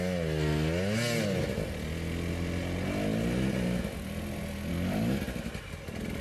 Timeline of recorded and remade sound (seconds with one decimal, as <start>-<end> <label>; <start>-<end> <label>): 0.0-6.2 recorded